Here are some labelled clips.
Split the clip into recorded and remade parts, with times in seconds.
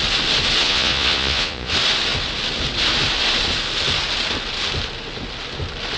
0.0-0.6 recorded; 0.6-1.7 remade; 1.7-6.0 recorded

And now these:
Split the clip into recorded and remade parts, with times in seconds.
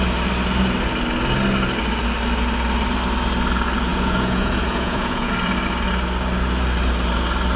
0.0-3.9 recorded; 3.9-5.3 remade; 5.3-7.6 recorded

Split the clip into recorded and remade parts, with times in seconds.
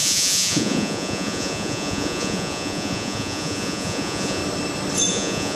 0.0-4.4 remade; 4.4-5.1 recorded; 5.1-5.6 remade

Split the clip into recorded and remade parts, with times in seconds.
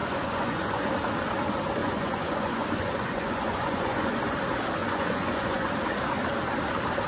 0.0-0.9 remade; 0.9-1.8 recorded; 1.8-4.2 remade; 4.2-4.8 recorded; 4.8-5.7 remade; 5.7-7.1 recorded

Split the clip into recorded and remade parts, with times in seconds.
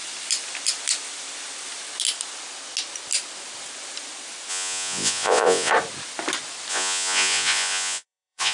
0.0-4.5 recorded; 4.5-5.7 remade; 5.7-6.7 recorded; 6.7-8.5 remade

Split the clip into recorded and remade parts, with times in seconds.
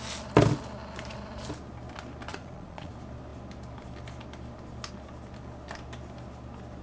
0.0-2.3 recorded; 2.3-2.9 remade; 2.9-6.8 recorded